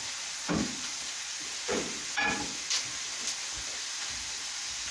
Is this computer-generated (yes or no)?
no